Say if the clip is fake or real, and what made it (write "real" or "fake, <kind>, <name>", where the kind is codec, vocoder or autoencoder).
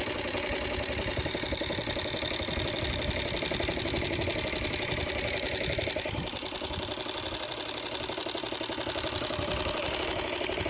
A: fake, vocoder, BigVGAN v2